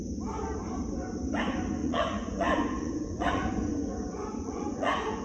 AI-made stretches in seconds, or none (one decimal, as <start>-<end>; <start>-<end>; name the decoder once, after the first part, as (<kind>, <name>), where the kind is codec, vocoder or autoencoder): 1.8-5.2 (vocoder, Vocos)